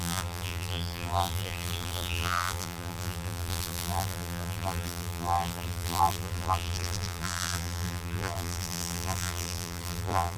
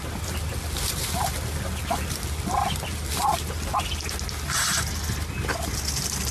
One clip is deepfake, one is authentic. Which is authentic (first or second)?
second